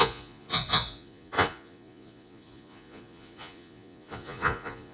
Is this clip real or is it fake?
fake